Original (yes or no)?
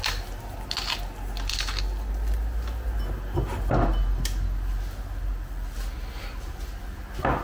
yes